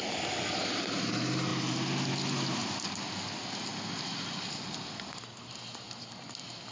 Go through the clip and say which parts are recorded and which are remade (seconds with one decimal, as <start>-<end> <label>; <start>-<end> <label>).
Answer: 0.0-6.7 recorded